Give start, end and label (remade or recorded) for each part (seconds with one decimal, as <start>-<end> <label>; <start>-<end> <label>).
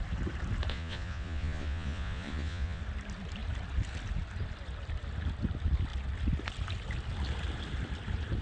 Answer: 0.0-0.7 recorded; 0.7-2.8 remade; 2.8-8.4 recorded